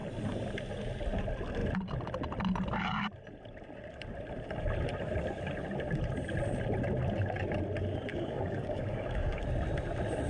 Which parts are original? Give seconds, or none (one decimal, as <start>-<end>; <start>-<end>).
0.0-8.1; 9.4-10.3